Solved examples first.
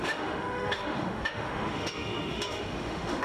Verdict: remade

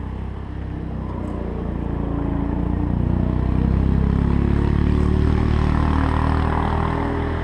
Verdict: recorded